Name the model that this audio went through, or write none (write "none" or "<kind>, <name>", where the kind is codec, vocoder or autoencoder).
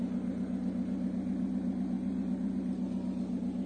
none